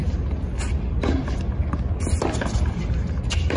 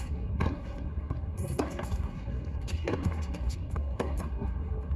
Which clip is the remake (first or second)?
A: second